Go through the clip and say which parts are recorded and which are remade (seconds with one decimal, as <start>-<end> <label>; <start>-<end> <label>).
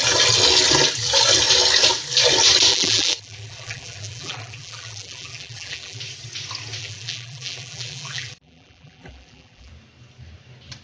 0.0-2.7 recorded; 2.7-6.0 remade; 6.0-6.8 recorded; 6.8-9.7 remade; 9.7-10.8 recorded